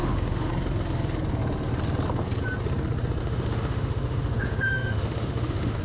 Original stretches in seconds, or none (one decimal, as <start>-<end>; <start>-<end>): 0.5-3.2